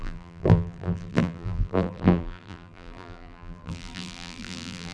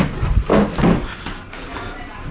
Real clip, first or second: second